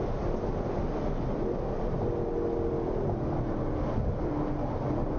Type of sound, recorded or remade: recorded